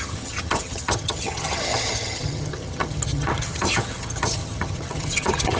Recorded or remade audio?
remade